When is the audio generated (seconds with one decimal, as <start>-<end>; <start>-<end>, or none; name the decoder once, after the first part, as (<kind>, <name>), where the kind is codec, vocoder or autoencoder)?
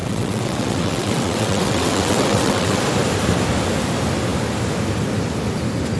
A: 0.0-2.8 (vocoder, WaveNeXt)